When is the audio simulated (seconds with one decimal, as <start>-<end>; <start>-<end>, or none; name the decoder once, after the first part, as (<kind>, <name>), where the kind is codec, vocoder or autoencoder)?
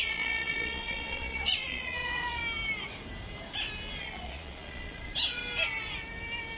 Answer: 0.0-2.4 (vocoder, Vocos); 4.0-5.4